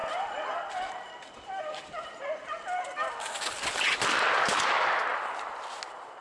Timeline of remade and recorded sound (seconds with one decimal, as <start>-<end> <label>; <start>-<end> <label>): 0.0-6.2 recorded

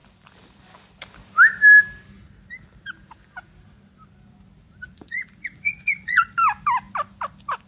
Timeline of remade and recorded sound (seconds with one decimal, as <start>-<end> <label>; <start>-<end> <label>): 0.0-4.9 recorded; 4.9-6.3 remade; 6.3-7.7 recorded

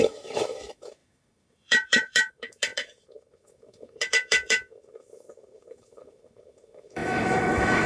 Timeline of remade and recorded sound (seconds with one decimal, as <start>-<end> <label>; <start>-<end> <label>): 0.0-7.9 remade

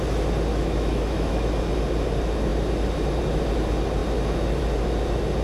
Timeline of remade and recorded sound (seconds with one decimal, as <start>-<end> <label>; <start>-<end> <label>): 0.0-0.5 recorded; 0.5-1.5 remade; 1.5-5.4 recorded

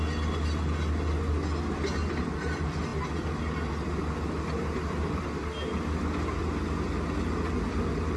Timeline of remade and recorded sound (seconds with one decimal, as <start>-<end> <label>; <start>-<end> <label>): 0.0-8.2 recorded

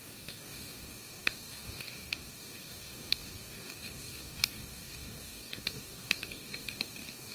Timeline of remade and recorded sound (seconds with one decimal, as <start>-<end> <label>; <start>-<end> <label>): 0.0-7.3 remade